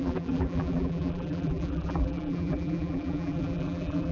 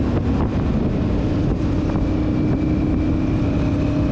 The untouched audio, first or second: second